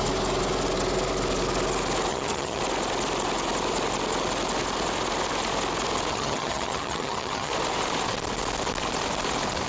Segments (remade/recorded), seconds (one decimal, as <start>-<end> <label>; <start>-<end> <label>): 0.0-2.1 recorded; 2.1-2.6 remade; 2.6-6.1 recorded; 6.1-7.5 remade; 7.5-9.7 recorded